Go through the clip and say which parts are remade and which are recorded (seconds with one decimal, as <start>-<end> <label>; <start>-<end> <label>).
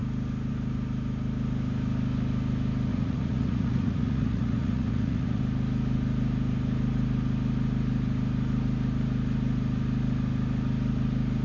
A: 0.0-2.9 recorded; 2.9-5.4 remade; 5.4-11.4 recorded